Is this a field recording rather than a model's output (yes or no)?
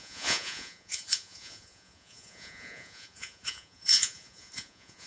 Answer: no